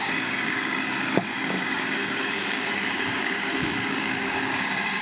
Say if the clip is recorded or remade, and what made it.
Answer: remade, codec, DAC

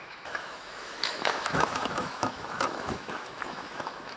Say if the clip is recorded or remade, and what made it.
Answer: remade, autoencoder, DAC-VAE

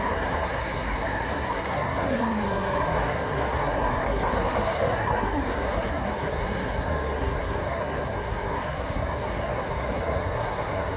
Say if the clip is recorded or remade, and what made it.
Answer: remade, codec, SNAC